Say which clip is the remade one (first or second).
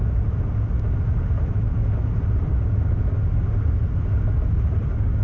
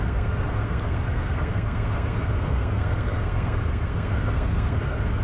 second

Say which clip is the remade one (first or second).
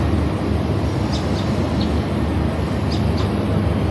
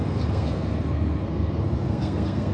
second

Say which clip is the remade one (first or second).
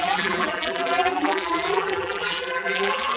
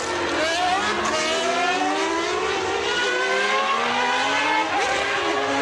first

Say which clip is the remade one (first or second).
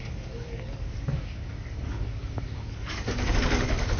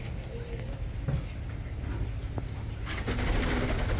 first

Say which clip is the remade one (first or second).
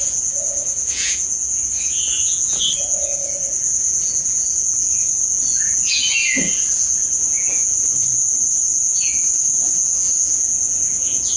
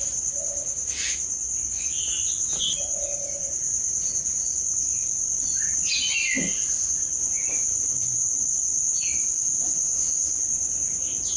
first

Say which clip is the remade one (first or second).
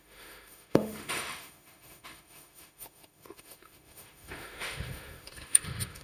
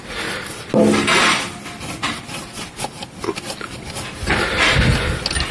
first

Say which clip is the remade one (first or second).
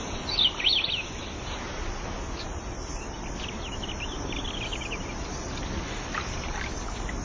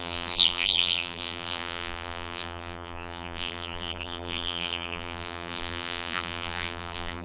second